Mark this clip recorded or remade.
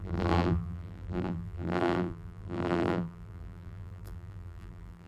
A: remade